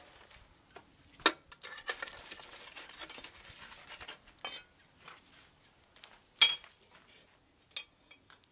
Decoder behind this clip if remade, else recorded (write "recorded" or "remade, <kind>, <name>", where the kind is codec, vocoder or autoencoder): recorded